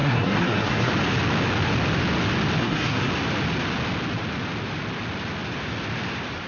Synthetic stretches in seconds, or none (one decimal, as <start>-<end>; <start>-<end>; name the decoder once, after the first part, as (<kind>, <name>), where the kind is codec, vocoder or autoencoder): 0.0-0.9 (codec, SNAC); 2.6-3.1